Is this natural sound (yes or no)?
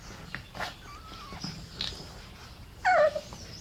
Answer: yes